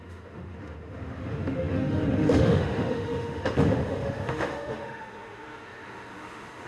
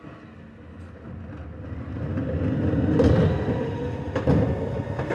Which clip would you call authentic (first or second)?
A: second